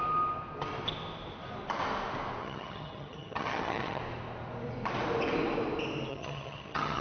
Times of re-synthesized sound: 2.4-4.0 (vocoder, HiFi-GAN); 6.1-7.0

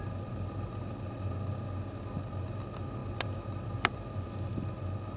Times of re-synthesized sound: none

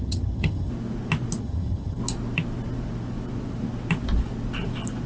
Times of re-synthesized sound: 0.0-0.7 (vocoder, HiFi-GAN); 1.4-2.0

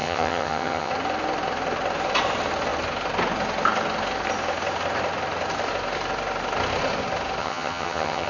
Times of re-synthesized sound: 0.0-0.9 (vocoder, HiFi-GAN); 7.4-8.3

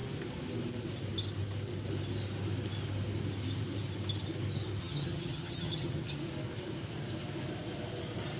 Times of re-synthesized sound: 4.8-6.0 (vocoder, HiFi-GAN)